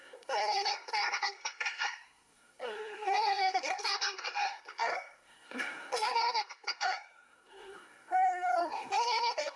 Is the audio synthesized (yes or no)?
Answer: yes